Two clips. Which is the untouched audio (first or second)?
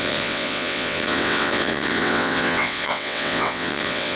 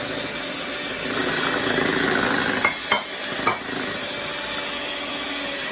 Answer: second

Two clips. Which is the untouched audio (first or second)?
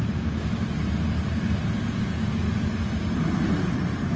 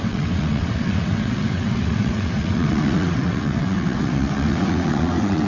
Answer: first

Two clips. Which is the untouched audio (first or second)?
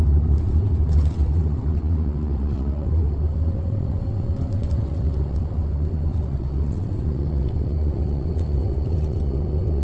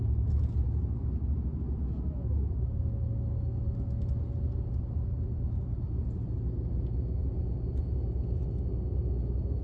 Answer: second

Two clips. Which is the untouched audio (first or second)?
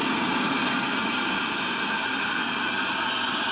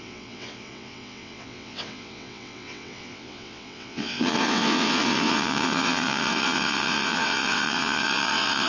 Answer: first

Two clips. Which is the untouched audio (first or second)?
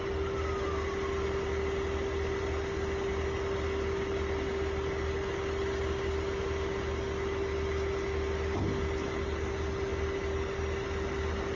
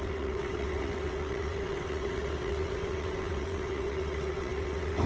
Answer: first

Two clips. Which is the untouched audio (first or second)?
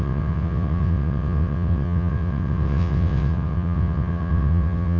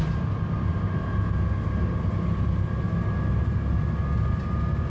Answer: second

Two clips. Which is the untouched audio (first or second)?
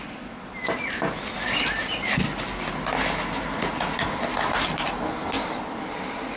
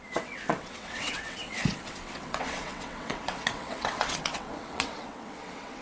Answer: first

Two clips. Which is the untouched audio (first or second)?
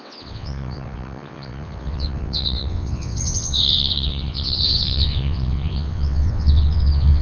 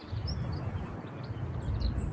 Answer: second